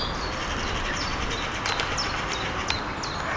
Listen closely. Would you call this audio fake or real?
real